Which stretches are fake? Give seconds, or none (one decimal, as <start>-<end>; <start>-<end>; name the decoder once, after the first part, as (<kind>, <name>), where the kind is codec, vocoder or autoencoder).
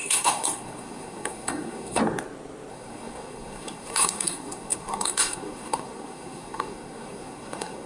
0.0-2.0 (codec, SNAC); 2.7-7.9